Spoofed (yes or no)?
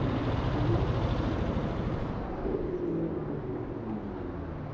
no